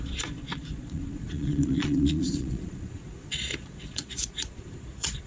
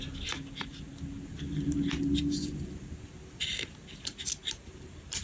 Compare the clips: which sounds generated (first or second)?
first